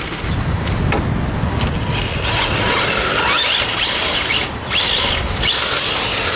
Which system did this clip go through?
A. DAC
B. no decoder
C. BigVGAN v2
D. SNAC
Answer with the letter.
B